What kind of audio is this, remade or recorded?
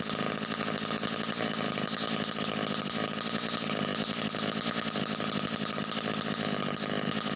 recorded